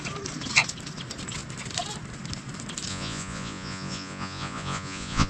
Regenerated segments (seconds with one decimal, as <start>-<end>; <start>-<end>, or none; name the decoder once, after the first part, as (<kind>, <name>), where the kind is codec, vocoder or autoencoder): 2.9-5.3 (vocoder, Vocos)